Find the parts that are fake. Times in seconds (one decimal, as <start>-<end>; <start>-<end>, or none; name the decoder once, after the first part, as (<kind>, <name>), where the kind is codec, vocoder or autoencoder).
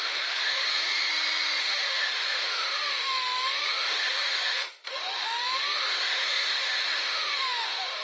0.0-1.1 (autoencoder, DAC-VAE); 1.6-8.0